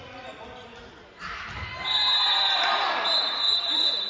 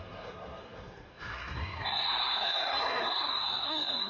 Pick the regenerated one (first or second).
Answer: second